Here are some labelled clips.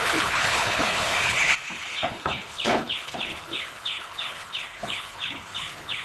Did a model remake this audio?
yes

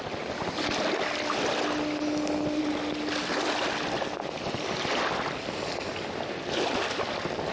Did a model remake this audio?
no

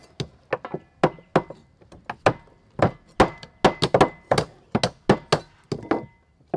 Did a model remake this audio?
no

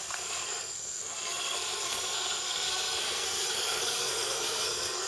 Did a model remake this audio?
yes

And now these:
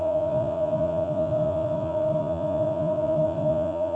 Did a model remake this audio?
yes